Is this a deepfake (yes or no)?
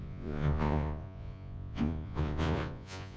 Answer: yes